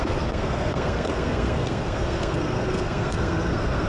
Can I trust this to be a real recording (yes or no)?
no